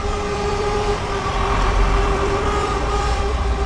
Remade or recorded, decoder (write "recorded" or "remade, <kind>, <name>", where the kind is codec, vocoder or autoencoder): remade, vocoder, BigVGAN v2